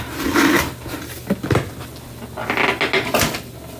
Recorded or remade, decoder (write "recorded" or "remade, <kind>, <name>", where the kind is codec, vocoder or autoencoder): recorded